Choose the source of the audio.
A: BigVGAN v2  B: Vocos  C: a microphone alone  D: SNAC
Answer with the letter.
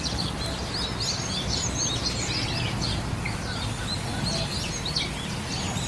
C